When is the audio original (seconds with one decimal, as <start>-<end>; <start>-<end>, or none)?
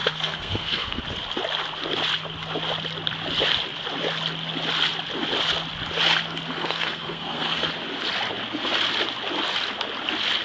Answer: 1.0-6.6; 7.7-10.4